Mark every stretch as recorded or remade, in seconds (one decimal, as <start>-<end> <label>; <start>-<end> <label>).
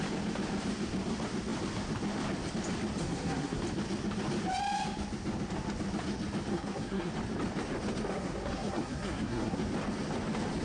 0.0-3.0 recorded; 3.0-3.6 remade; 3.6-6.5 recorded; 6.5-7.1 remade; 7.1-8.1 recorded; 8.1-9.6 remade; 9.6-10.6 recorded